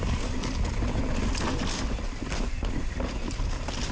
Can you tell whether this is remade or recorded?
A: recorded